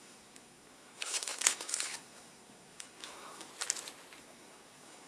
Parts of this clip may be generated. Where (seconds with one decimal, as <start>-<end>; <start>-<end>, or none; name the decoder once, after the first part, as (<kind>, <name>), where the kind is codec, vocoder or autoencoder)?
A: 0.0-3.5 (codec, SNAC); 4.2-5.1